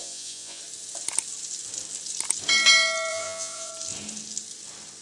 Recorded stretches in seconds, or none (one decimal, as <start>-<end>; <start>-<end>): 0.6-3.1; 3.7-5.0